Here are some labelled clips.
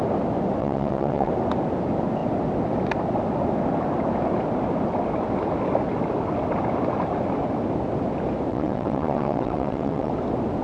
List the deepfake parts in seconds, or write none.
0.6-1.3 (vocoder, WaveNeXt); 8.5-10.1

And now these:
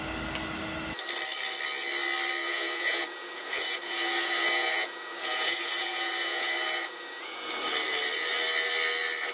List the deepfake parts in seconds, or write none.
2.4-7.5 (vocoder, Vocos)

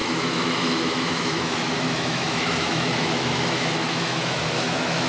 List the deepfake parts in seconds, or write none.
0.0-5.1 (autoencoder, DAC-VAE)

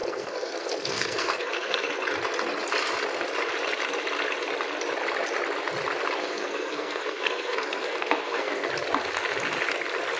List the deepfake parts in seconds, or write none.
0.0-1.9 (codec, SNAC); 6.2-8.7

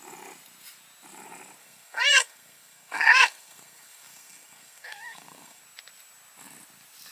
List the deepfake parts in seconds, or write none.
1.6-5.6 (codec, SNAC)

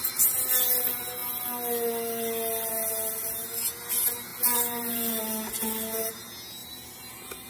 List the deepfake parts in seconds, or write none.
4.3-5.2 (vocoder, BigVGAN v2); 6.6-7.5

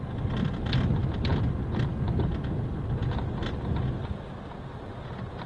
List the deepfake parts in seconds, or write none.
none